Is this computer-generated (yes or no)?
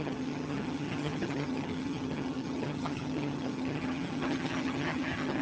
yes